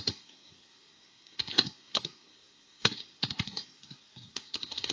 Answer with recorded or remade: remade